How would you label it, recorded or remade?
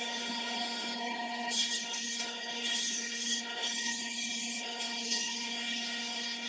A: remade